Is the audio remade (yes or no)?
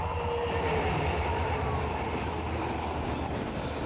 no